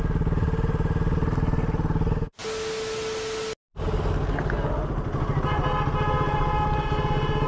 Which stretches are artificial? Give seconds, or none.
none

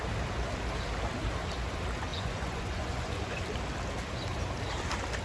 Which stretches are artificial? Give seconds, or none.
2.1-3.4 (vocoder, Vocos)

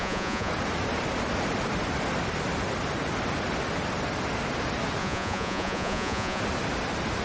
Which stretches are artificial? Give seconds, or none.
0.0-0.5 (vocoder, Vocos); 5.0-6.4